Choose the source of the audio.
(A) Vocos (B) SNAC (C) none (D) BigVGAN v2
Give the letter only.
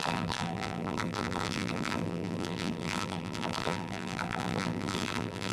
D